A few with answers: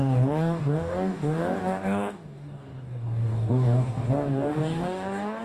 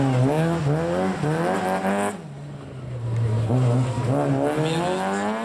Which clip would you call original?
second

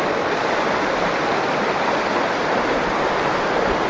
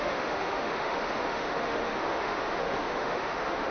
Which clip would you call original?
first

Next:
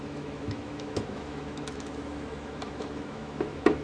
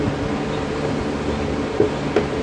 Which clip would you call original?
second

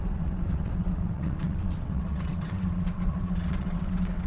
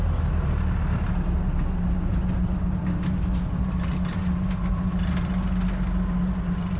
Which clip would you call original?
second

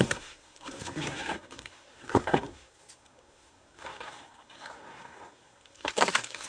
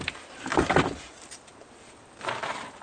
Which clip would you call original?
second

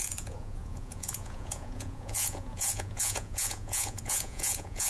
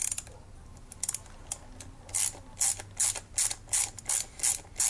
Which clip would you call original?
second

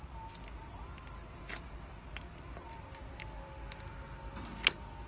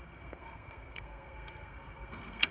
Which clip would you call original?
first